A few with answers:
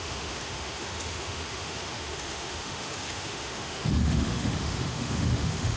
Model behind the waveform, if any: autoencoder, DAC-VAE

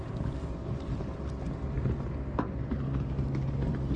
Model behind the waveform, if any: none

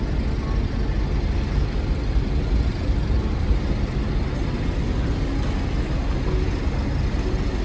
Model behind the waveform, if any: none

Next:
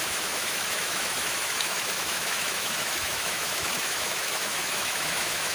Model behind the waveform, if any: autoencoder, DAC-VAE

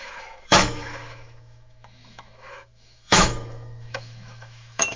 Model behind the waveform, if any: autoencoder, DAC-VAE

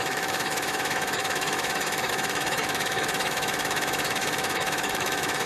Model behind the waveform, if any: autoencoder, DAC-VAE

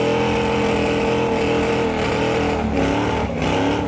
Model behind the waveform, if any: none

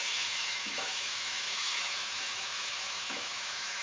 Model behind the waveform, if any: autoencoder, DAC-VAE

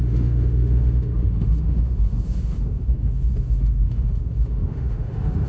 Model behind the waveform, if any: autoencoder, DAC-VAE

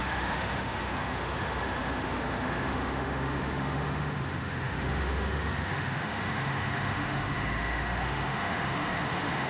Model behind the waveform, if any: autoencoder, DAC-VAE